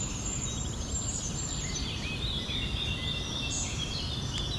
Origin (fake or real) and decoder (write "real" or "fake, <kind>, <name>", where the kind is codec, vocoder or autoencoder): fake, vocoder, BigVGAN v2